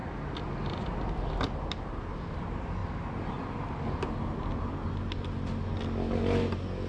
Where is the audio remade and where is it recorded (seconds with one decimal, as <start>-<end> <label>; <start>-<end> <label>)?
0.0-6.9 recorded